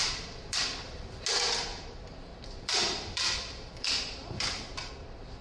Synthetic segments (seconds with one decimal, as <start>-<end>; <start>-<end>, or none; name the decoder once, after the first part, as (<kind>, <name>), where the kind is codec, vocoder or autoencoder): 0.0-1.1 (vocoder, BigVGAN v2); 1.7-4.9